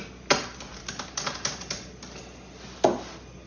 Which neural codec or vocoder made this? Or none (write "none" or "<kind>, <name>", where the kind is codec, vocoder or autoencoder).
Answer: none